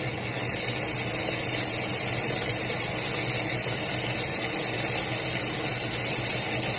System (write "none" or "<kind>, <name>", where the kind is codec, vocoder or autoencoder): none